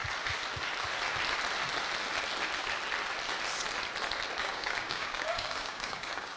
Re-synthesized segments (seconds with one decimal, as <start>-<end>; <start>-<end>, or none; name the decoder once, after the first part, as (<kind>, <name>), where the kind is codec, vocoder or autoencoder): 4.4-6.4 (codec, DAC)